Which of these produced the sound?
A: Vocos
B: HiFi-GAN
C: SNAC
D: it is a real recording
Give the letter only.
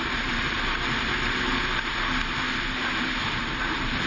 D